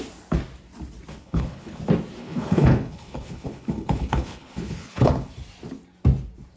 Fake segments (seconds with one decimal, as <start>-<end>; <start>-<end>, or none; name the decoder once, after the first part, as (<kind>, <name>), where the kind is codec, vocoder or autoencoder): 1.1-1.8 (codec, HILCodec); 2.2-5.1